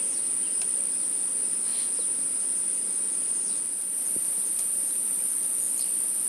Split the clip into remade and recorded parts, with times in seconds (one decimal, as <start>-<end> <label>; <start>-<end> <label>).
0.0-6.3 recorded